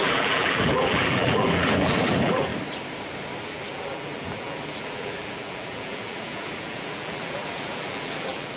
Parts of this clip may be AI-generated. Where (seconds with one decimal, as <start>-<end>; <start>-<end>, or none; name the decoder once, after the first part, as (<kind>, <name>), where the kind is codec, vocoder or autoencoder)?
0.0-2.5 (vocoder, BigVGAN v2); 3.4-8.6